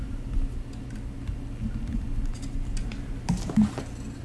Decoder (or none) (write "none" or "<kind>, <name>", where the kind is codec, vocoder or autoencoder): none